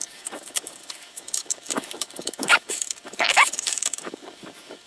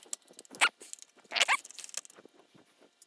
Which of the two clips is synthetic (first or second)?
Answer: first